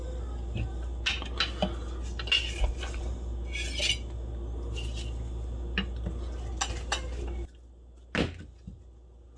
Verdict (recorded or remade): recorded